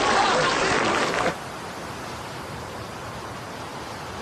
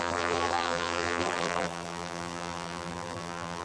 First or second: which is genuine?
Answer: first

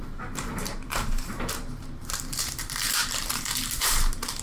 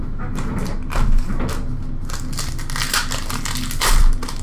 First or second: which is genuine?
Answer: second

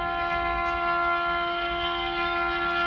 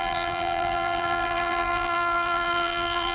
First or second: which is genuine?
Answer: first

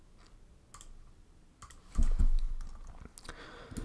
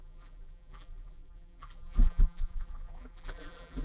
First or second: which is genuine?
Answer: first